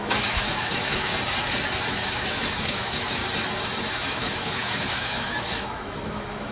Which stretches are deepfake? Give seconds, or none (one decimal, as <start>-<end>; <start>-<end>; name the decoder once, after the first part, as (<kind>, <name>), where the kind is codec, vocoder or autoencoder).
0.0-1.1 (autoencoder, DAC-VAE); 1.9-3.2; 3.8-6.5